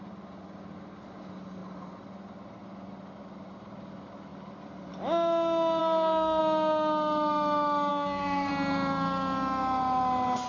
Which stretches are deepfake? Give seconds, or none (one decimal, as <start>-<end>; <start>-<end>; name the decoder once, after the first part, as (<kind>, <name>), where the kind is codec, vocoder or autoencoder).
5.8-6.4 (codec, SNAC); 7.9-8.5